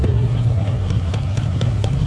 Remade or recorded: remade